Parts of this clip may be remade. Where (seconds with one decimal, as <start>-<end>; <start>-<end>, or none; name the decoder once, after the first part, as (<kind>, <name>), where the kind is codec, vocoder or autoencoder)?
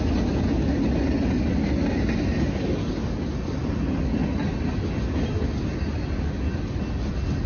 none